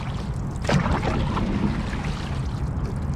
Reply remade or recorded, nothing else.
recorded